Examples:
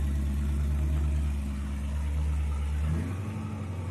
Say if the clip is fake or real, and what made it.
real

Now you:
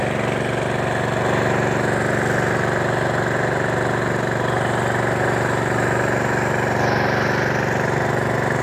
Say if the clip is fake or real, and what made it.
real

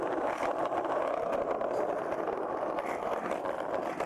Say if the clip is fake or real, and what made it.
real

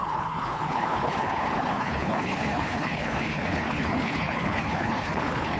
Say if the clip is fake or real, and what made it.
fake, codec, HILCodec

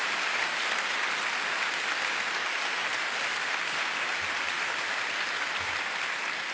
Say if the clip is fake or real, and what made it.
real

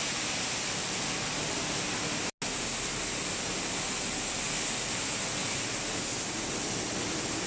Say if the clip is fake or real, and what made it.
real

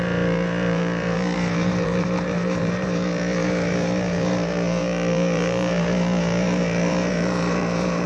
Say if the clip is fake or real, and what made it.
fake, vocoder, BigVGAN v2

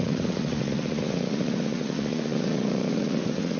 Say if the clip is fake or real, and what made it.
fake, vocoder, Vocos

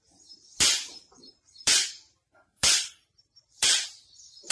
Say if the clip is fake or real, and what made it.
fake, vocoder, BigVGAN v2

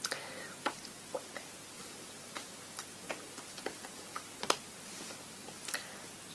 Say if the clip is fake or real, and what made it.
real